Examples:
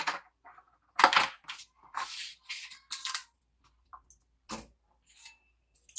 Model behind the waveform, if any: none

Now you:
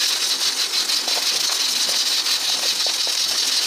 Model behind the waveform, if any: none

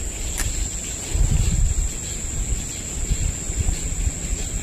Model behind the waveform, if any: none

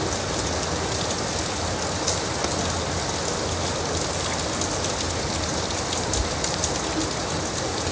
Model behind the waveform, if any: none